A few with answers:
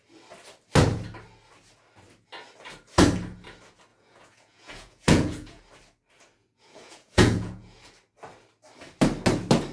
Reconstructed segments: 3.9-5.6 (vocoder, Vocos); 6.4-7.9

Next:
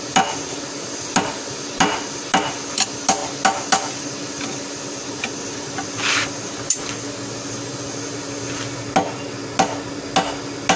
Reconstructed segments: none

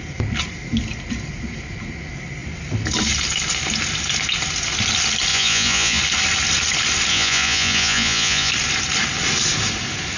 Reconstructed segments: 5.3-6.0 (vocoder, Vocos); 7.1-8.5

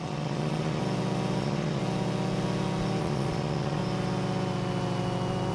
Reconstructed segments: 0.0-0.8 (vocoder, Vocos); 1.4-1.8; 3.0-3.8